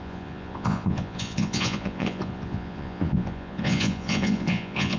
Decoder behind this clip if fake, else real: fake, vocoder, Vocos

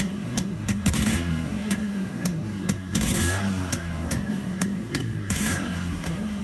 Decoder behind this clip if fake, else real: fake, codec, SNAC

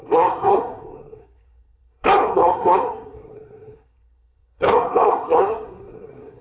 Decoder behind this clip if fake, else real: fake, codec, SNAC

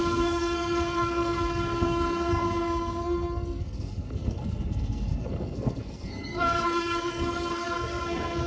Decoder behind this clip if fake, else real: fake, codec, SNAC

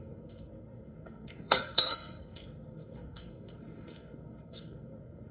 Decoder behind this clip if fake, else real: fake, codec, SNAC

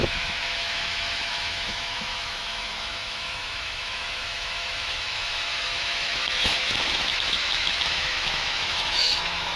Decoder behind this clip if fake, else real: fake, autoencoder, DAC-VAE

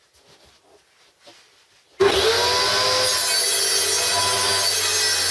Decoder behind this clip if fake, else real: real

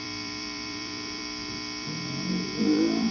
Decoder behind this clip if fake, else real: fake, vocoder, BigVGAN v2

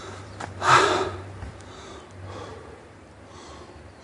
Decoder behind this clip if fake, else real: fake, vocoder, BigVGAN v2